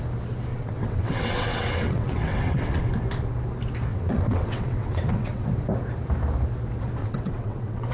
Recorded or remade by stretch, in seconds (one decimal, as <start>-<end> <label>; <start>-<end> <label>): 0.0-0.5 recorded; 0.5-2.8 remade; 2.8-3.9 recorded; 3.9-5.5 remade; 5.5-7.0 recorded; 7.0-7.9 remade

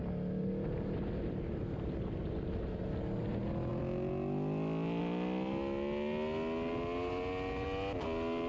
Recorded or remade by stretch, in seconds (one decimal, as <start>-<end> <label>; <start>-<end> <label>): 0.0-8.5 recorded

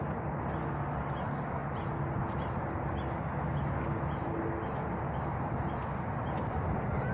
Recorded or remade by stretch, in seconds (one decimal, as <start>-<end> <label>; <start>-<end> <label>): 0.0-7.1 recorded

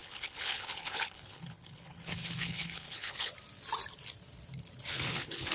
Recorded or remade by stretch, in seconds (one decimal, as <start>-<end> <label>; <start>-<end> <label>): 0.0-3.3 remade; 3.3-4.9 recorded; 4.9-5.5 remade